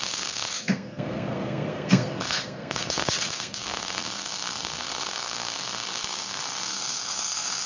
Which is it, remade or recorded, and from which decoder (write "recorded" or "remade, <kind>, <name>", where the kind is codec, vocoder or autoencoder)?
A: remade, codec, SNAC